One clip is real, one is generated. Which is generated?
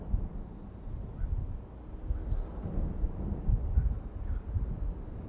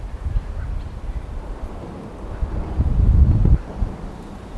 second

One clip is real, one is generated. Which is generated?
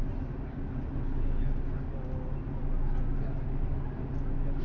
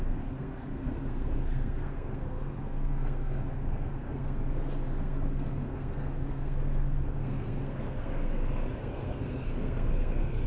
second